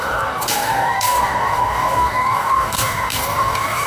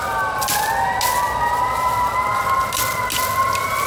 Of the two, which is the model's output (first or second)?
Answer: first